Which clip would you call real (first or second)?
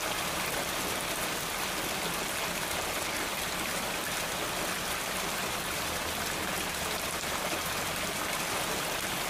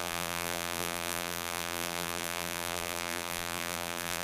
first